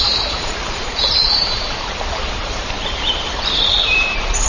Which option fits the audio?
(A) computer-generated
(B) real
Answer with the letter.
A